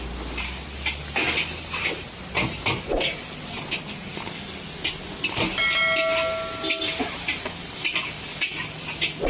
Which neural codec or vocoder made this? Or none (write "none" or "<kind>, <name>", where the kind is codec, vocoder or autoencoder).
none